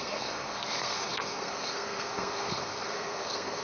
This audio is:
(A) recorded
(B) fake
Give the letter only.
B